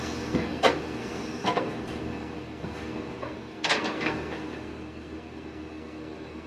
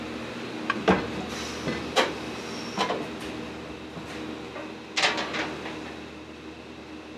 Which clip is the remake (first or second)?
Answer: first